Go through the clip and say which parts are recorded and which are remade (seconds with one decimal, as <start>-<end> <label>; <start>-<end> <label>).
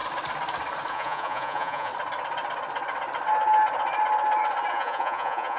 0.0-0.9 recorded; 0.9-1.9 remade; 1.9-4.7 recorded; 4.7-5.6 remade